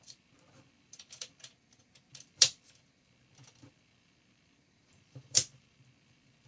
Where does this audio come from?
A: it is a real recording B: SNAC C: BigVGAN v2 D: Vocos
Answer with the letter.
C